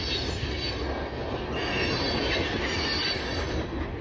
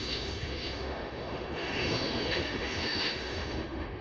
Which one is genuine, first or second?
first